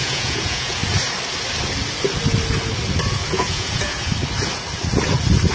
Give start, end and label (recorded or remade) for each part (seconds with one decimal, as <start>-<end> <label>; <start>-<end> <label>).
0.0-0.8 remade; 0.8-3.3 recorded; 3.3-4.1 remade; 4.1-5.5 recorded